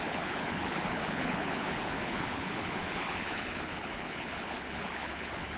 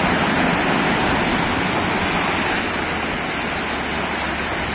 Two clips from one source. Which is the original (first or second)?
second